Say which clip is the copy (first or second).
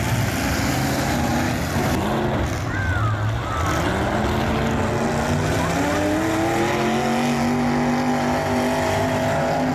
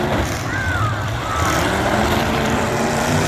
second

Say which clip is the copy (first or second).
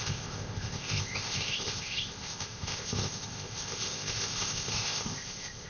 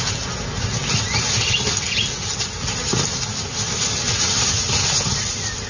first